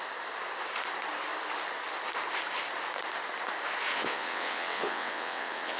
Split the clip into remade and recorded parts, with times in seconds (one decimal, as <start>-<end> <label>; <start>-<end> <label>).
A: 0.0-3.9 recorded; 3.9-5.8 remade